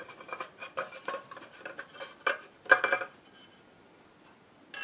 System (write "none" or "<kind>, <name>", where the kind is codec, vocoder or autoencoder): none